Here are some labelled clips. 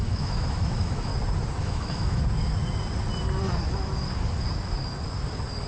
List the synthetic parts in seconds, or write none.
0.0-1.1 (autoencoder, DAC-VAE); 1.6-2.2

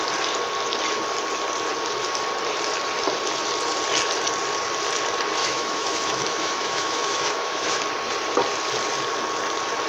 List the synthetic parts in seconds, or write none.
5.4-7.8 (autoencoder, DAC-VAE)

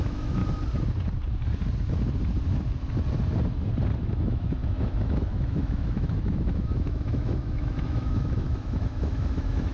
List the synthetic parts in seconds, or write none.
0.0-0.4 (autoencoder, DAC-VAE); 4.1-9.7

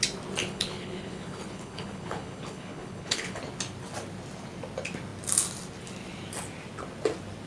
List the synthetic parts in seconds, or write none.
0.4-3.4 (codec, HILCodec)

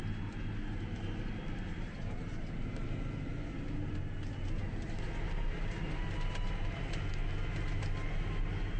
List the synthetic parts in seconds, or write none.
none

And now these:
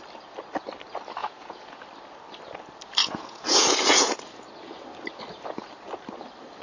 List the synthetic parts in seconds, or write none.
1.2-1.8 (vocoder, Vocos); 3.0-4.3

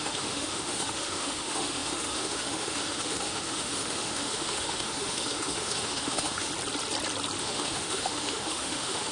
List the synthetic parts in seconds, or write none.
0.0-6.5 (autoencoder, DAC-VAE); 7.4-9.1

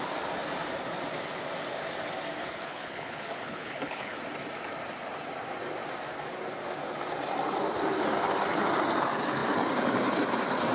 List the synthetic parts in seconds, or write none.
2.4-4.2 (codec, HILCodec)